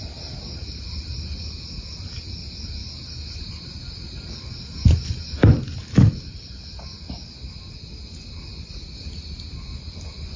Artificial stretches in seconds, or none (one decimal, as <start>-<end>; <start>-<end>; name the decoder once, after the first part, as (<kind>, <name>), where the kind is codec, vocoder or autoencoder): none